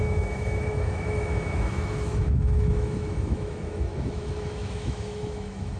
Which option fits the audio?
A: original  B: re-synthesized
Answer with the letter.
B